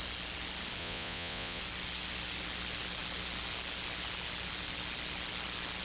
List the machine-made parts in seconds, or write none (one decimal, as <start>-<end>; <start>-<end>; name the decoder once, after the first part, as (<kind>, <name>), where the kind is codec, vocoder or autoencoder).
0.8-1.6 (vocoder, Vocos)